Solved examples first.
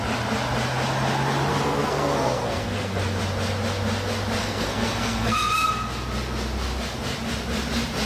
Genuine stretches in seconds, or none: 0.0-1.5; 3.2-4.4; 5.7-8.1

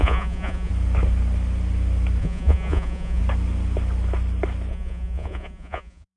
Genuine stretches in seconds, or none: 0.7-2.2; 3.2-4.7